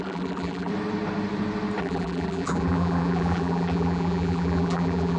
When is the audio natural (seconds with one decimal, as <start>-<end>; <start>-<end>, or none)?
0.7-1.8